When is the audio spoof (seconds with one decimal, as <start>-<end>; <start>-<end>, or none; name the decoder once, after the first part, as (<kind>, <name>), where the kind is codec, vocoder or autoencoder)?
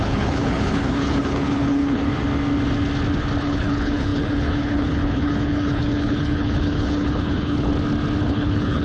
0.0-2.1 (codec, HILCodec); 3.4-7.7; 8.2-8.8